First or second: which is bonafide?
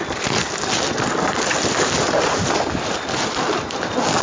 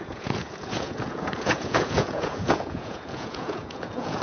first